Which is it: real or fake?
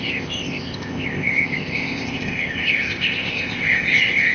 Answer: fake